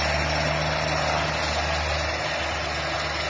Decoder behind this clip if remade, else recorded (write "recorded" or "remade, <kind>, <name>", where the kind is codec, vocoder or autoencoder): recorded